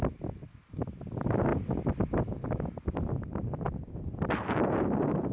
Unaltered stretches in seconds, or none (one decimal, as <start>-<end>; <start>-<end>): 0.0-5.3